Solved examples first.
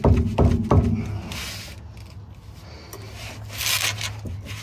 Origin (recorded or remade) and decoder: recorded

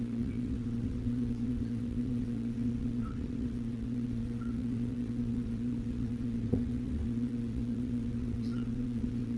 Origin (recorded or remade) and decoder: remade, vocoder, WaveNeXt